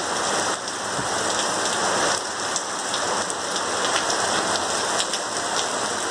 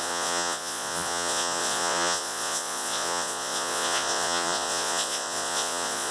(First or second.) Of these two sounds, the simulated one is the second